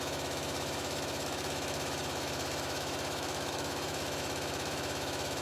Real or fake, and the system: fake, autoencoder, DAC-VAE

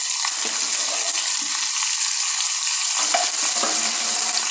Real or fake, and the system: real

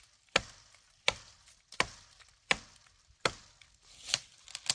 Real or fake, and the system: real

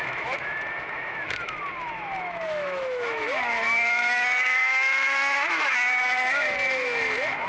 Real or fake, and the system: fake, autoencoder, DAC-VAE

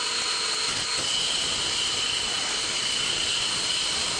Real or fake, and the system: real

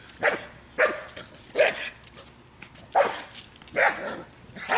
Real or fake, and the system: real